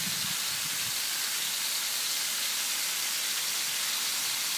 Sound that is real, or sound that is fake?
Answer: real